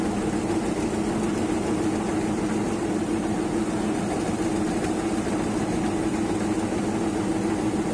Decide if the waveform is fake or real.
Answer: real